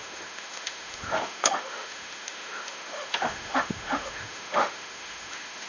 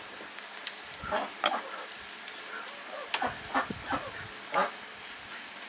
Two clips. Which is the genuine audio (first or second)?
second